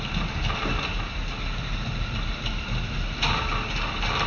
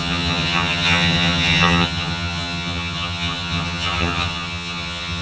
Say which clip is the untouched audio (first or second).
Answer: first